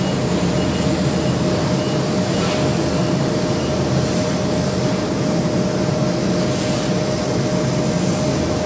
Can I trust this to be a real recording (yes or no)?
yes